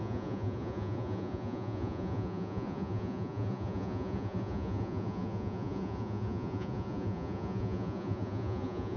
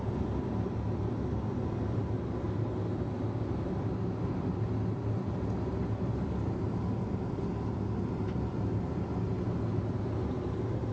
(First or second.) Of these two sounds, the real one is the second